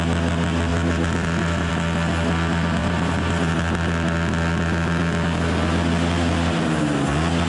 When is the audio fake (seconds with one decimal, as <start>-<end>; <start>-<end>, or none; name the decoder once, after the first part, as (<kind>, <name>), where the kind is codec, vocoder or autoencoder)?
0.7-1.7 (vocoder, BigVGAN v2); 2.8-3.5